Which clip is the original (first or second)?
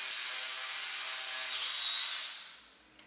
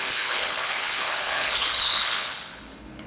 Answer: first